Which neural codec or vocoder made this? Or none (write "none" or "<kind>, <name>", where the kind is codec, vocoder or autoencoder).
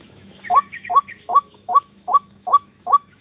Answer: autoencoder, DAC-VAE